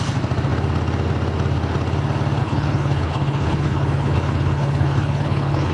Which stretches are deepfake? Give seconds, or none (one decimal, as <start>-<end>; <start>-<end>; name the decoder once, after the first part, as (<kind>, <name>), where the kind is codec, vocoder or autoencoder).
2.4-5.7 (codec, HILCodec)